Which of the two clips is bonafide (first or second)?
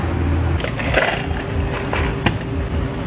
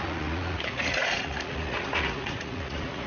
first